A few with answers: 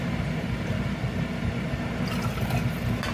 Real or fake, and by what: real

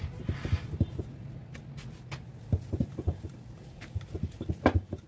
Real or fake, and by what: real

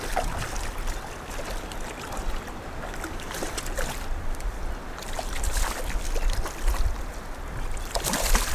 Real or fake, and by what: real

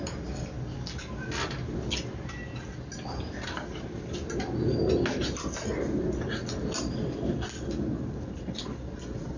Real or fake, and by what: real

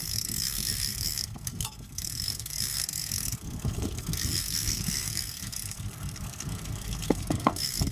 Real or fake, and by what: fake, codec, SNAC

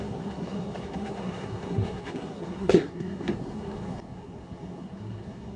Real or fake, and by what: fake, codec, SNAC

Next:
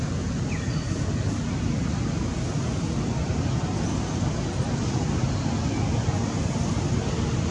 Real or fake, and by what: real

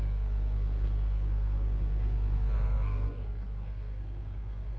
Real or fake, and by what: fake, codec, SNAC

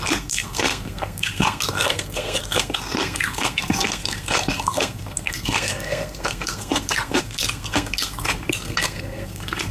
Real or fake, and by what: fake, codec, SNAC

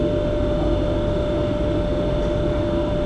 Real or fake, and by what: real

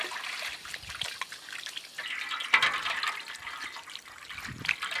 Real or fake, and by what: real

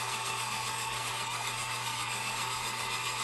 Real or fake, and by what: fake, codec, SNAC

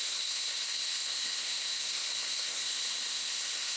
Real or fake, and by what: fake, codec, SNAC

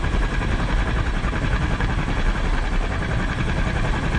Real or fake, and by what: real